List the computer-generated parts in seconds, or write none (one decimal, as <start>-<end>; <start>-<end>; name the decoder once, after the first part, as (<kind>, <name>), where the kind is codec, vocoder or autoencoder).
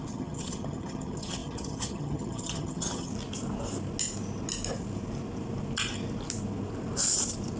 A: 0.0-3.1 (vocoder, HiFi-GAN)